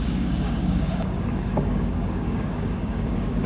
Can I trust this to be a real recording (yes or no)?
no